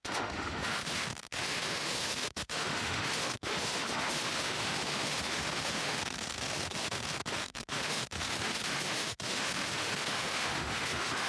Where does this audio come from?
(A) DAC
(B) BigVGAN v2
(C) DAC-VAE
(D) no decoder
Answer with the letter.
C